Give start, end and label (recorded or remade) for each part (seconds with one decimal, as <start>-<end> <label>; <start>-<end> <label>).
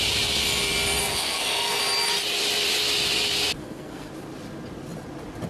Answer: 0.0-1.0 recorded; 1.0-1.8 remade; 1.8-3.6 recorded; 3.6-4.1 remade; 4.1-5.5 recorded